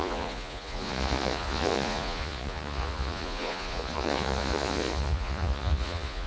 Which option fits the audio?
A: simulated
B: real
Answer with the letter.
A